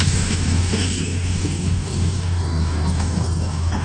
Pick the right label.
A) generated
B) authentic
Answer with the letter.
A